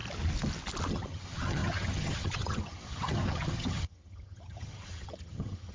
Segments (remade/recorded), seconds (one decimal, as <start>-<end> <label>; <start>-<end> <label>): 0.0-0.9 recorded; 0.9-5.7 remade